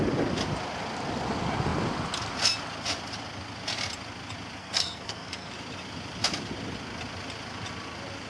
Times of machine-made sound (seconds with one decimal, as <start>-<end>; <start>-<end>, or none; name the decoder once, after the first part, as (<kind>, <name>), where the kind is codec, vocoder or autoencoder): 4.6-5.5 (codec, SNAC)